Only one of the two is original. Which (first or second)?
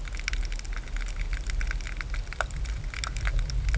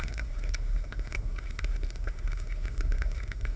first